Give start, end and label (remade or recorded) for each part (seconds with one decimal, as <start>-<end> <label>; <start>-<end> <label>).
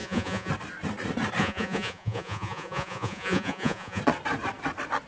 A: 0.0-0.5 remade; 0.5-1.4 recorded; 1.4-4.0 remade; 4.0-5.1 recorded